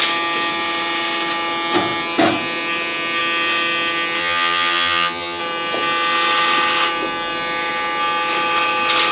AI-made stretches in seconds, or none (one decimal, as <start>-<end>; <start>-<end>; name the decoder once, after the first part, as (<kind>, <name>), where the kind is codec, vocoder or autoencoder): 4.2-5.4 (vocoder, HiFi-GAN)